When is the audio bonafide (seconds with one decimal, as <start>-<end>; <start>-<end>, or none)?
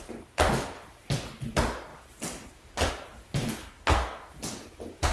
0.0-3.6; 4.3-5.1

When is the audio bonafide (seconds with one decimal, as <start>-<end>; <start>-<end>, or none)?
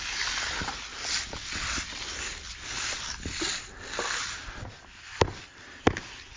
0.0-6.4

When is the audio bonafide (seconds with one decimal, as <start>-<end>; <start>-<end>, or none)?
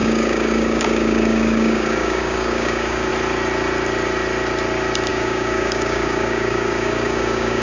3.1-5.1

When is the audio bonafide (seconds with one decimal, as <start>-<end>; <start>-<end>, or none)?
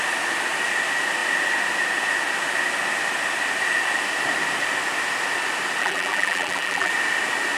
0.0-5.8; 6.9-7.6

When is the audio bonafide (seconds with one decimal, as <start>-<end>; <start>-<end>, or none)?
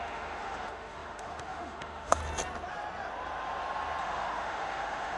2.2-4.0